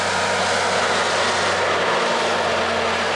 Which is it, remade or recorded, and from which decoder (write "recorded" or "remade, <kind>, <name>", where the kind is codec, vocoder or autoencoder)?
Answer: recorded